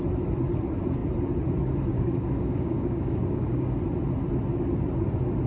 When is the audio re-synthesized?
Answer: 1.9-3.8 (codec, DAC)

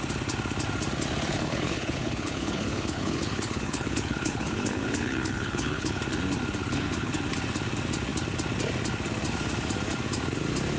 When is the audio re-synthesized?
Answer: 1.3-6.0 (codec, HILCodec); 6.6-7.2

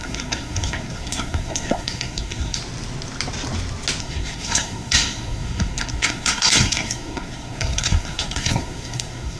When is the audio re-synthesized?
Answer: 0.0-2.6 (codec, SNAC); 4.0-9.4

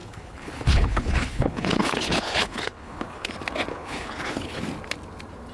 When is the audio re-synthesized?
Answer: 0.0-3.3 (codec, HILCodec); 3.7-4.6

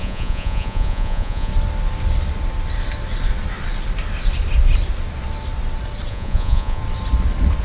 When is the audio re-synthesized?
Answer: 0.0-1.5 (vocoder, Vocos); 6.1-6.8

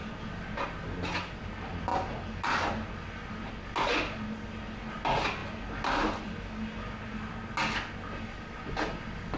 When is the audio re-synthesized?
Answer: none

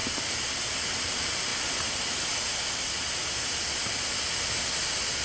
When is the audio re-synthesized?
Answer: none

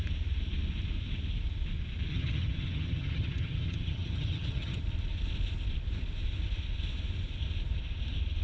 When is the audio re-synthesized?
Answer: 2.1-4.8 (vocoder, HiFi-GAN)